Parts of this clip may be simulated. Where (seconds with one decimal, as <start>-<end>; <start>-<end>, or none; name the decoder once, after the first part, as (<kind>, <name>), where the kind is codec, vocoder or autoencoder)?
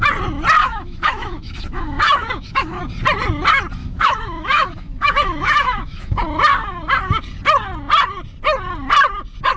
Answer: 0.6-2.8 (autoencoder, DAC-VAE); 3.8-6.2